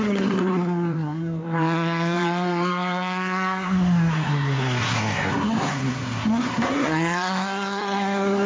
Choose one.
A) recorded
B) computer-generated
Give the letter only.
B